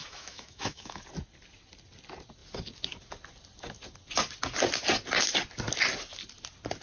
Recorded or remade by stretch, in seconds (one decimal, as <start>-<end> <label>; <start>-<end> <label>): 0.0-1.0 remade; 1.0-6.8 recorded